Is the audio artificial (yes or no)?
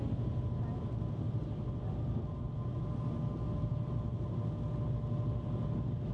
no